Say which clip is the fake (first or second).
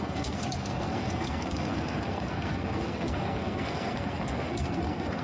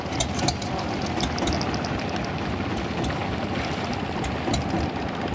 first